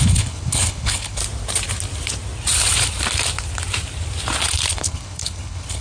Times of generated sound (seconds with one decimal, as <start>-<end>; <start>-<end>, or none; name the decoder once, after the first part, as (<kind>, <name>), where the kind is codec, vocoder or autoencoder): 0.0-1.2 (codec, HILCodec); 4.7-5.8